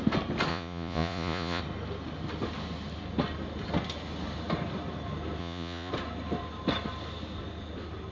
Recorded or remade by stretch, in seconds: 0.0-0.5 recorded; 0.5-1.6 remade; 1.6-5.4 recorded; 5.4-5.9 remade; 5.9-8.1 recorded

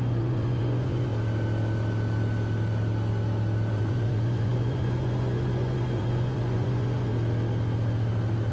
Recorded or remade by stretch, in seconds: 0.0-1.1 remade; 1.1-3.7 recorded; 3.7-7.1 remade; 7.1-8.5 recorded

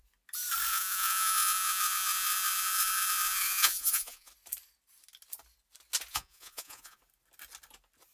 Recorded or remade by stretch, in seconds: 0.0-0.7 recorded; 0.7-4.3 remade; 4.3-6.1 recorded; 6.1-7.0 remade; 7.0-8.1 recorded

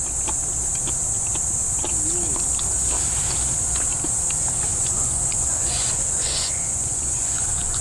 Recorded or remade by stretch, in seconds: 0.0-4.7 recorded; 4.7-7.8 remade

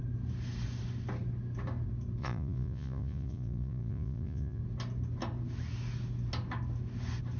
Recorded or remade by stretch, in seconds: 0.0-2.2 recorded; 2.2-4.6 remade; 4.6-7.4 recorded

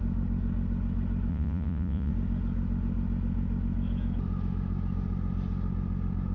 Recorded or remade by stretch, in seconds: 0.0-1.3 recorded; 1.3-2.1 remade; 2.1-6.3 recorded

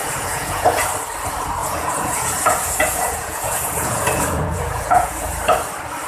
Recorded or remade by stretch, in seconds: 0.0-0.8 remade; 0.8-1.6 recorded; 1.6-5.3 remade; 5.3-6.1 recorded

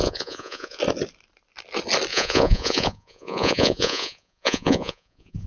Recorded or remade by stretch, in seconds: 0.0-0.8 remade; 0.8-2.1 recorded; 2.1-5.5 remade